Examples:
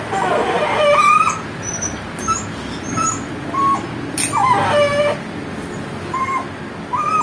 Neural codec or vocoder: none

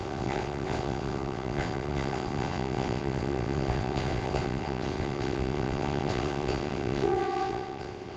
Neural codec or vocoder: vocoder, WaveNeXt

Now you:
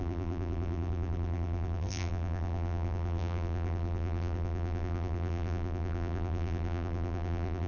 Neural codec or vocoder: vocoder, BigVGAN v2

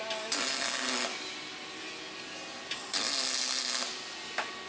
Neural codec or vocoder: none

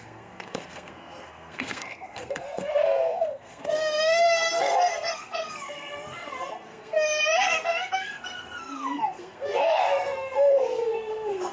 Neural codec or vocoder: codec, SNAC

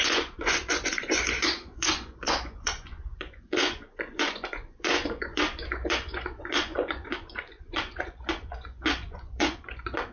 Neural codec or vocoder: vocoder, Vocos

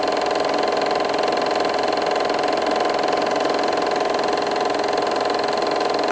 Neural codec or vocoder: vocoder, BigVGAN v2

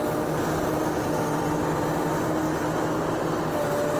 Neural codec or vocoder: none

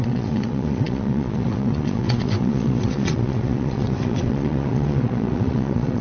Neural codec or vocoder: vocoder, WaveNeXt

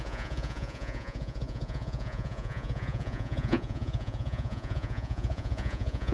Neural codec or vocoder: vocoder, Vocos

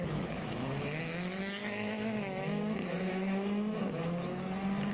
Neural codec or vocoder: autoencoder, DAC-VAE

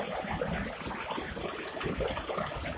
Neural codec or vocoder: none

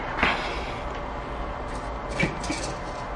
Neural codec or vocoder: none